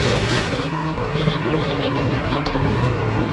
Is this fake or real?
fake